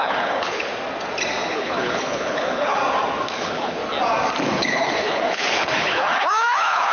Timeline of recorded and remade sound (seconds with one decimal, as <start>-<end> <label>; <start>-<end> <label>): 0.0-0.7 remade; 0.7-1.5 recorded; 1.5-2.8 remade; 2.8-3.3 recorded; 3.3-3.8 remade; 3.8-4.4 recorded; 4.4-6.9 remade